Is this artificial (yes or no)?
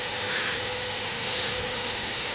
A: yes